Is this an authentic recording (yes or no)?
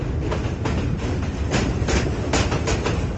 yes